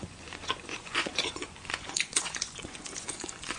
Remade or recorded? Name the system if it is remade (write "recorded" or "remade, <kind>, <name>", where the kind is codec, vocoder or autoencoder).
remade, vocoder, Vocos